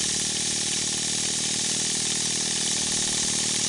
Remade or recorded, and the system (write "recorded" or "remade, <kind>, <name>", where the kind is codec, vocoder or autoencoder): recorded